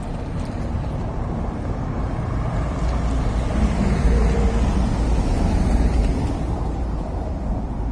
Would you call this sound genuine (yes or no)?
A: yes